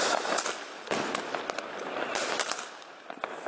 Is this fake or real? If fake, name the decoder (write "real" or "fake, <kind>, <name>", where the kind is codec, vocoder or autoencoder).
real